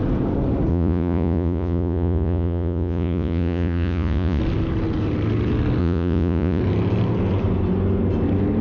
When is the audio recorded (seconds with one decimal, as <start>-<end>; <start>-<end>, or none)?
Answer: 0.0-0.7; 4.4-5.8; 6.6-8.6

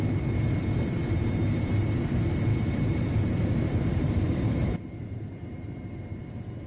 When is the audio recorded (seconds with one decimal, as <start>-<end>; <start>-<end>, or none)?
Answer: 0.0-2.5; 6.2-6.7